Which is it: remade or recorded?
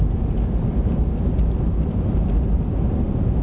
recorded